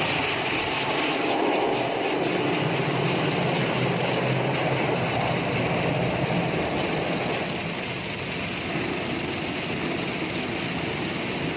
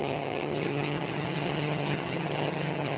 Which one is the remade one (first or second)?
second